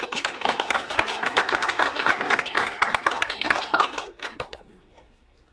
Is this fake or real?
fake